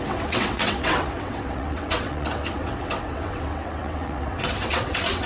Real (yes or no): no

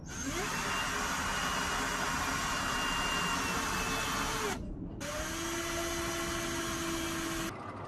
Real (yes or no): yes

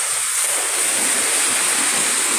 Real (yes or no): no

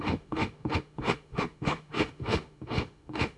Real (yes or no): no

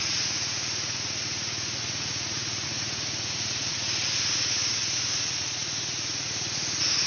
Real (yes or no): no